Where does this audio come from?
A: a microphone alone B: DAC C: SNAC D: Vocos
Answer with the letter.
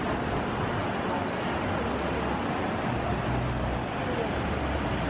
A